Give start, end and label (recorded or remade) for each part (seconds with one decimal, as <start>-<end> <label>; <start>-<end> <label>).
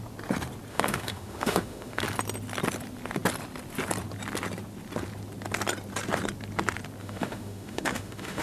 0.0-0.7 recorded; 0.7-2.0 remade; 2.0-7.0 recorded; 7.0-8.4 remade